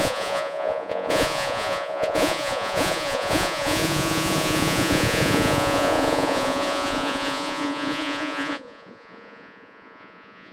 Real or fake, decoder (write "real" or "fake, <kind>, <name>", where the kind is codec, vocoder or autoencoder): fake, vocoder, Vocos